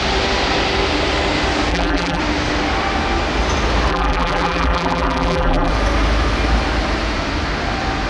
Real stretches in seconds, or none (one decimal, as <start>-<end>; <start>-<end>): 0.0-1.7; 2.2-3.9; 5.7-8.1